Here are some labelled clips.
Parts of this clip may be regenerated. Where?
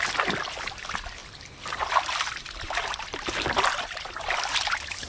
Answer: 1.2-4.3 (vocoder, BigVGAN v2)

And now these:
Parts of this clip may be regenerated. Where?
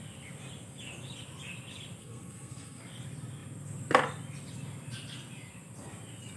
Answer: 2.0-2.8 (codec, SNAC)